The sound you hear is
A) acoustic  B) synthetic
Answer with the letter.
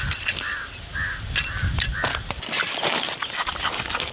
A